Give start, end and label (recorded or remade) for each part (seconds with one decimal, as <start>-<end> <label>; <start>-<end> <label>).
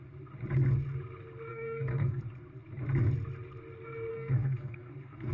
0.0-1.5 recorded; 1.5-2.2 remade; 2.2-4.1 recorded; 4.1-5.3 remade